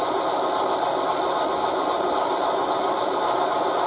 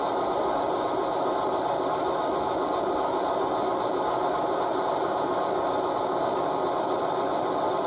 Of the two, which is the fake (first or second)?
first